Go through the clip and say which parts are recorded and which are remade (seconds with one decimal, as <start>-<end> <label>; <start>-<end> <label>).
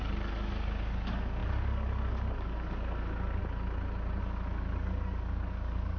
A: 0.0-3.4 remade; 3.4-4.2 recorded; 4.2-6.0 remade